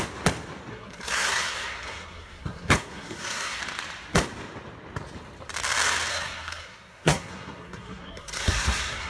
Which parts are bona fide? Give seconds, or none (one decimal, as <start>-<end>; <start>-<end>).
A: 0.0-0.7; 3.6-6.1